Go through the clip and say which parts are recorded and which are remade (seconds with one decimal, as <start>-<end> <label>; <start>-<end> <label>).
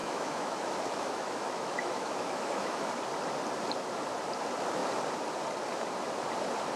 0.0-2.9 remade; 2.9-6.8 recorded